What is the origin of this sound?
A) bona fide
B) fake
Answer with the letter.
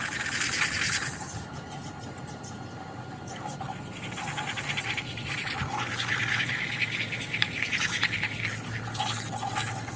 A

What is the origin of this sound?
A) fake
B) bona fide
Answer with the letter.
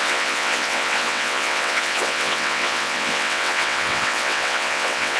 A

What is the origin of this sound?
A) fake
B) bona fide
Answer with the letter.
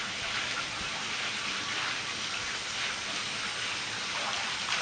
B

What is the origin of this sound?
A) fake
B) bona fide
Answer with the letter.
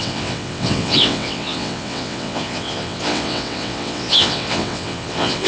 A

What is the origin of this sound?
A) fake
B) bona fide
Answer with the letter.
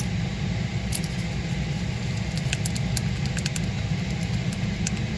B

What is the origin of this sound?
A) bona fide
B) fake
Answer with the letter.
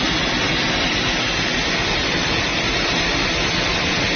A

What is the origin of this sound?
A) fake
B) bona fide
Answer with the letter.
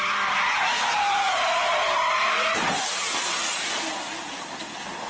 B